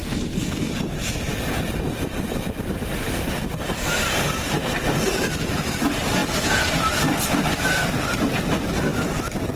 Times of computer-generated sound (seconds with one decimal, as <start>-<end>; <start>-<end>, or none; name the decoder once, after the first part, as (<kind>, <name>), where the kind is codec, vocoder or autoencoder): 0.0-0.7 (codec, SNAC)